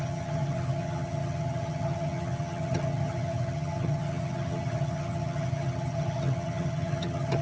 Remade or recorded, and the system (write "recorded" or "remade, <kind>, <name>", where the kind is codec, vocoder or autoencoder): remade, vocoder, HiFi-GAN